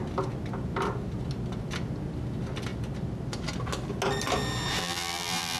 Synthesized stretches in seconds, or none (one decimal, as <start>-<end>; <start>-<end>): 4.8-5.6